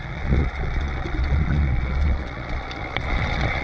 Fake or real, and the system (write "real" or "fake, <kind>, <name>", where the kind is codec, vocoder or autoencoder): fake, vocoder, Vocos